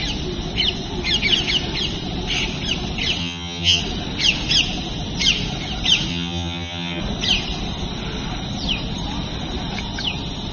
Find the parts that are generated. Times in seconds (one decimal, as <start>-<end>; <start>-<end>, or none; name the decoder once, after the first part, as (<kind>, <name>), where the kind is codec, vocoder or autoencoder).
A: 3.2-3.8 (vocoder, HiFi-GAN); 6.1-7.0